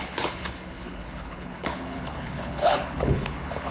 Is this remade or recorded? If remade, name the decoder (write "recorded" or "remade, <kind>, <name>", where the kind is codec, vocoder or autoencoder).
remade, codec, HILCodec